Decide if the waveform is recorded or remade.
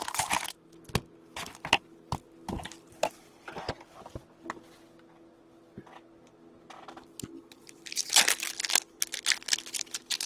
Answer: recorded